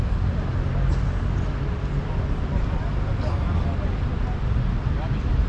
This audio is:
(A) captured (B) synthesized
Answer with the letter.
A